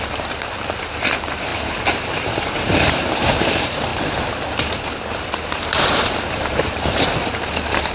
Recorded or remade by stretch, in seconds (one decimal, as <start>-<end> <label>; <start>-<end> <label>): 0.0-3.9 remade; 3.9-5.3 recorded; 5.3-7.9 remade